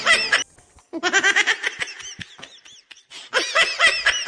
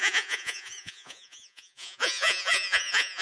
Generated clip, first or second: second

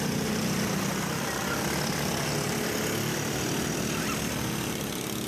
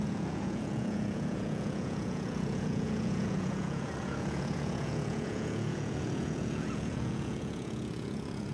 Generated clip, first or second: second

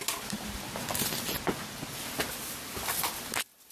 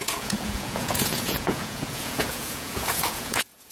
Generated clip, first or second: second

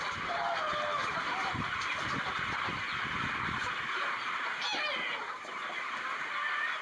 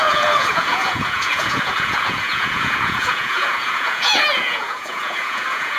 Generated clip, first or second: second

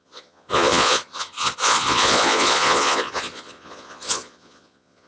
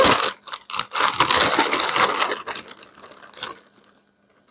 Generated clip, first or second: first